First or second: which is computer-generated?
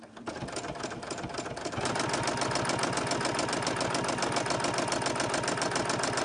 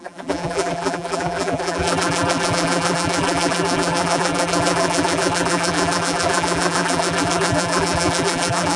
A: second